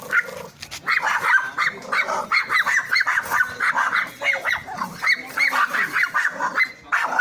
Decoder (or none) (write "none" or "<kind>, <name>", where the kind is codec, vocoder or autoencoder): none